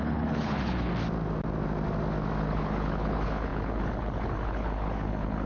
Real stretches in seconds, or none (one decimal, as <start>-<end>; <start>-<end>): 0.9-2.4